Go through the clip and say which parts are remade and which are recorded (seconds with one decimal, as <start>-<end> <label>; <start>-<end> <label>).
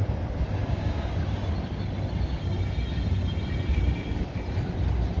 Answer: 0.0-0.6 recorded; 0.6-1.1 remade; 1.1-5.2 recorded